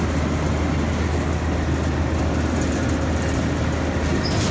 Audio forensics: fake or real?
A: real